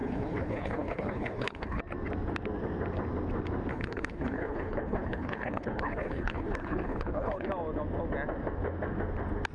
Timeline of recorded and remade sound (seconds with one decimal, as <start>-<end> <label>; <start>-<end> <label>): 0.0-1.8 remade; 1.8-3.7 recorded; 3.7-7.5 remade; 7.5-9.5 recorded